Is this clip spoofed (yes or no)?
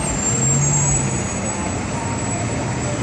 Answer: no